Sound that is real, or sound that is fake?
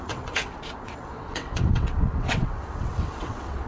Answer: fake